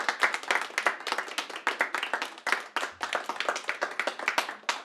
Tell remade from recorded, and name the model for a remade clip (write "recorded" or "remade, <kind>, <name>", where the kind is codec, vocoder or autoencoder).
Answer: recorded